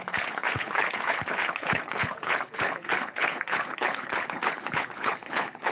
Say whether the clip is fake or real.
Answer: fake